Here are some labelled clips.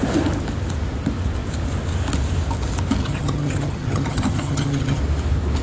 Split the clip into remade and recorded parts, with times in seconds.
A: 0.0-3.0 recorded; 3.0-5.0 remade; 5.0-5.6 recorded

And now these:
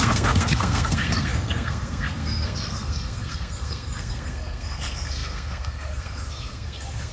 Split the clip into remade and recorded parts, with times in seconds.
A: 0.0-7.1 remade

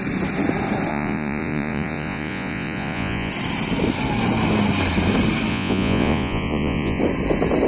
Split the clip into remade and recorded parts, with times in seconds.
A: 0.0-0.9 recorded; 0.9-3.3 remade; 3.3-5.5 recorded; 5.5-7.0 remade; 7.0-7.7 recorded

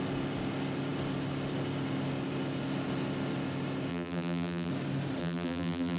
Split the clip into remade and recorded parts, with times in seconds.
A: 0.0-3.9 recorded; 3.9-4.7 remade; 4.7-5.2 recorded; 5.2-6.0 remade

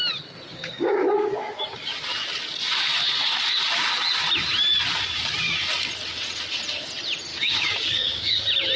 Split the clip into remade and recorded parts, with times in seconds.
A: 0.0-0.5 recorded; 0.5-1.6 remade; 1.6-7.3 recorded; 7.3-8.4 remade; 8.4-8.8 recorded

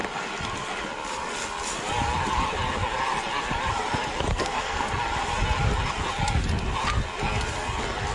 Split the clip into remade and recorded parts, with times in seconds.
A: 0.0-4.3 recorded; 4.3-4.9 remade; 4.9-8.1 recorded

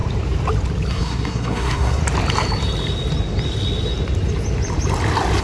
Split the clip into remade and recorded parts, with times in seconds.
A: 0.0-0.9 recorded; 0.9-2.0 remade; 2.0-5.4 recorded